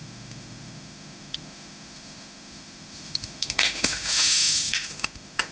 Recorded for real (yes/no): no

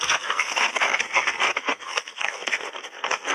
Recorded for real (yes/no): no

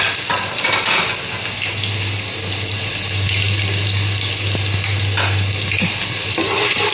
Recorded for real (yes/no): yes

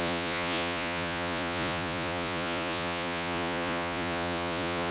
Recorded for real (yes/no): no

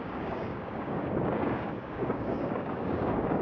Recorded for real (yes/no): no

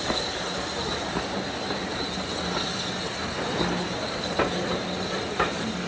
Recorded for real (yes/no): yes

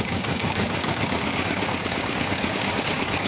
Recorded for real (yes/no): no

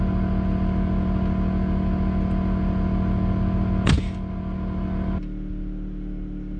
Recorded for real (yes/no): yes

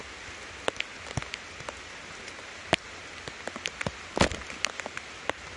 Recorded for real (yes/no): yes